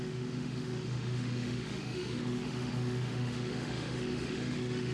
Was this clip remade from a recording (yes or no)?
yes